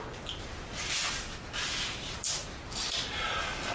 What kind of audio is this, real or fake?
real